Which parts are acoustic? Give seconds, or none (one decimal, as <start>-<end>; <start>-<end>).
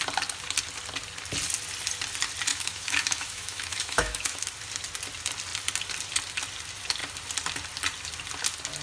0.0-2.5; 4.5-8.8